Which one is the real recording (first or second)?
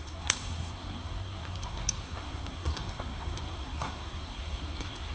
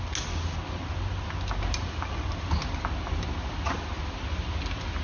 second